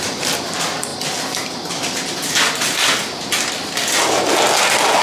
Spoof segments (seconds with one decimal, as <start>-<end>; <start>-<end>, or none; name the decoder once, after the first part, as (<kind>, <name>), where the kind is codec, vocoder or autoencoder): none